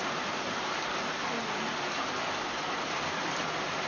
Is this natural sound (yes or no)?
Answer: yes